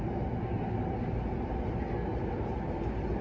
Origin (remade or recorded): recorded